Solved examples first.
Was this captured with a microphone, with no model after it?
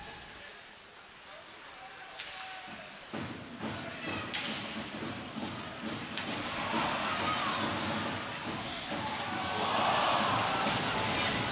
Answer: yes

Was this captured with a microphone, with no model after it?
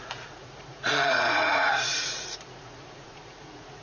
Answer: no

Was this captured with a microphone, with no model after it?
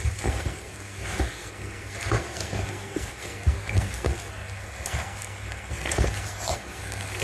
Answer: no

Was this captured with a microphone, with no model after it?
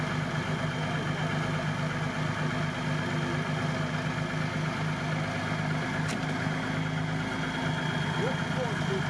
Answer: yes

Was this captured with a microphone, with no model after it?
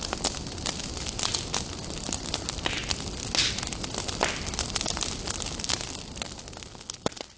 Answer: yes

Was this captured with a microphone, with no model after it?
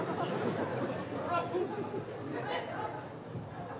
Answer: yes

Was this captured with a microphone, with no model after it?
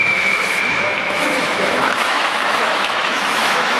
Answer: no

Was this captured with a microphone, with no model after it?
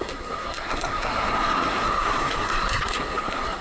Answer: no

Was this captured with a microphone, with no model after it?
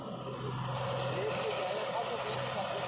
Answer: yes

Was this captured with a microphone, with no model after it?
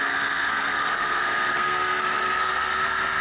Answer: no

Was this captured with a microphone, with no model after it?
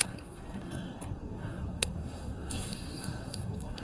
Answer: no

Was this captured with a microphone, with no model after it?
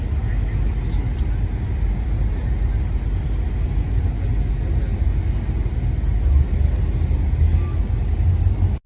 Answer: yes